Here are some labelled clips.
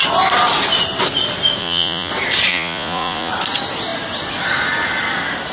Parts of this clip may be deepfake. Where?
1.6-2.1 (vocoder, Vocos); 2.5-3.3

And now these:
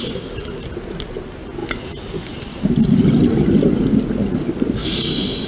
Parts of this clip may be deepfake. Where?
none

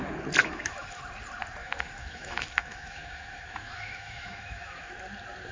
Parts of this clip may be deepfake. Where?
0.4-1.0 (autoencoder, DAC-VAE); 1.6-4.9

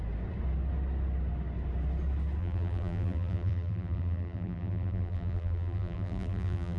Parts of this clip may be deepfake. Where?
2.4-6.8 (vocoder, BigVGAN v2)

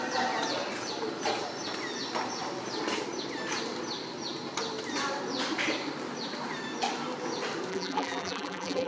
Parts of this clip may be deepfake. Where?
7.7-8.9 (vocoder, BigVGAN v2)

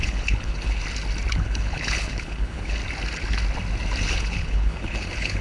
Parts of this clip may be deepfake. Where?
0.0-0.8 (codec, HILCodec); 1.3-2.8; 4.1-5.4

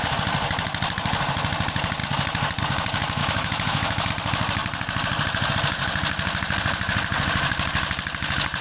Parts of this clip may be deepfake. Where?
3.2-4.1 (autoencoder, DAC-VAE)

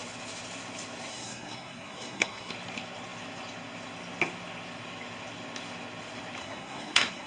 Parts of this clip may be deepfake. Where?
1.1-2.5 (codec, SNAC); 6.4-7.3